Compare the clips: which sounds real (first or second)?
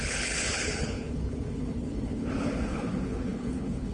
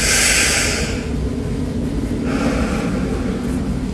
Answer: second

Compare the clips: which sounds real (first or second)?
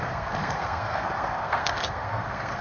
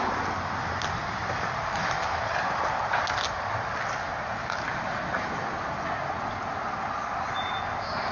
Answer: second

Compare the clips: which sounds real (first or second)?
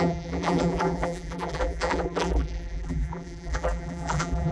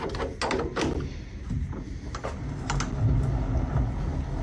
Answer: second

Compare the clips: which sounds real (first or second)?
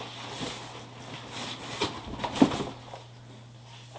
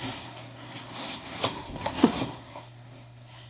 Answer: first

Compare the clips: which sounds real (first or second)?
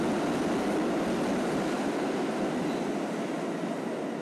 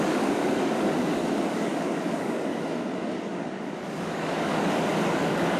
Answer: first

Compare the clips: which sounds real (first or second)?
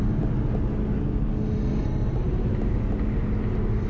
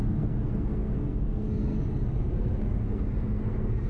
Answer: first